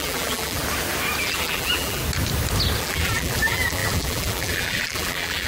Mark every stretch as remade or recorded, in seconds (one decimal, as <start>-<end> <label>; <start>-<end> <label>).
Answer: 0.0-0.6 remade; 0.6-1.2 recorded; 1.2-2.0 remade; 2.0-2.8 recorded; 2.8-5.5 remade